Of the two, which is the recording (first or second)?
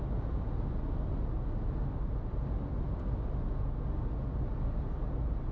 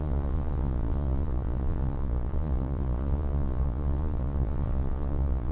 first